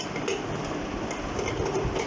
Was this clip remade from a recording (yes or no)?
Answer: no